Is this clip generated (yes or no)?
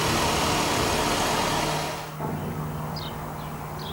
no